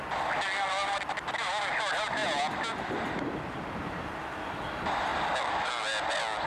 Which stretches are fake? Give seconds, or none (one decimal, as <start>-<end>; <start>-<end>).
5.1-5.7